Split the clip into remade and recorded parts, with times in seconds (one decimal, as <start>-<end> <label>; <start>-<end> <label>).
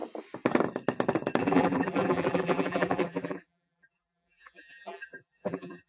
0.0-1.4 recorded; 1.4-5.9 remade